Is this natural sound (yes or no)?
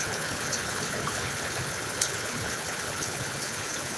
no